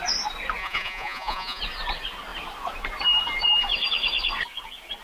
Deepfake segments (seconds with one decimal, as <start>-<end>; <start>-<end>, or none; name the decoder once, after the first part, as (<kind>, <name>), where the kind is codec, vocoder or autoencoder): 0.6-1.6 (vocoder, Vocos)